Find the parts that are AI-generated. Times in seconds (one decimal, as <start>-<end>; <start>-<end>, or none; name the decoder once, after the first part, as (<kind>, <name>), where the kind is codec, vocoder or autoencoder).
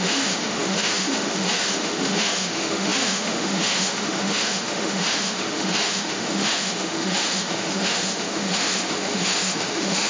0.0-10.1 (autoencoder, DAC-VAE)